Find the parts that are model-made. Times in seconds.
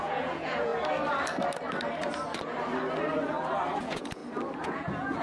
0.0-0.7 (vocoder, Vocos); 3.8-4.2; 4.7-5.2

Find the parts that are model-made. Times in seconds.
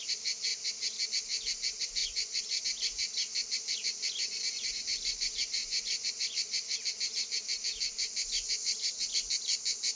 2.0-2.6 (vocoder, Vocos)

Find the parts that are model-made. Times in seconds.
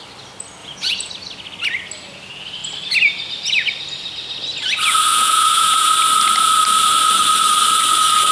0.6-1.1 (vocoder, Vocos); 5.1-5.9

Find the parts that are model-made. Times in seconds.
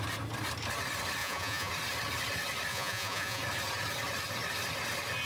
1.2-1.7 (vocoder, Vocos); 2.7-3.4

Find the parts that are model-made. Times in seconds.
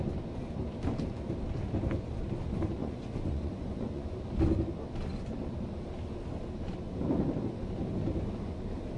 2.8-4.2 (vocoder, Vocos)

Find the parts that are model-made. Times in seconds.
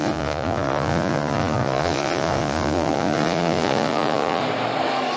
0.0-4.4 (vocoder, Vocos)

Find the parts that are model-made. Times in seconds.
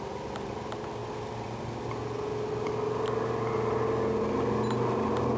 none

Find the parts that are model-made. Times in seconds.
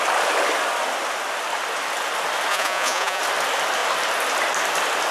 2.5-3.2 (vocoder, Vocos)